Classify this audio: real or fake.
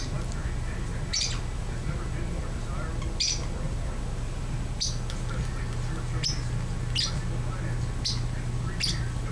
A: real